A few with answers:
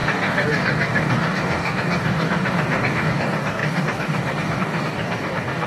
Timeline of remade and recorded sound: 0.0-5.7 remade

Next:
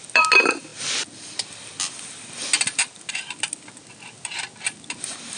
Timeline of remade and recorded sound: 0.0-5.4 recorded

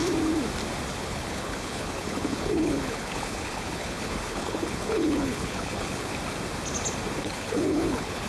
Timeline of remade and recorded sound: 0.0-0.9 recorded; 0.9-6.1 remade; 6.1-7.2 recorded; 7.2-8.3 remade

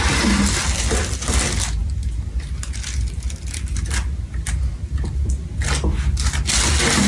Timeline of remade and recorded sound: 0.0-7.1 recorded

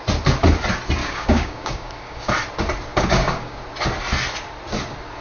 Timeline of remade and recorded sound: 0.0-1.0 recorded; 1.0-2.3 remade; 2.3-2.9 recorded; 2.9-3.6 remade; 3.6-5.2 recorded

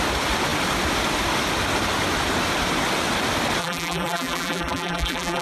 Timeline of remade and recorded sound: 0.0-3.6 recorded; 3.6-5.4 remade

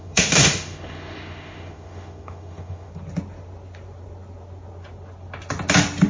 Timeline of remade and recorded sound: 0.0-2.9 remade; 2.9-6.1 recorded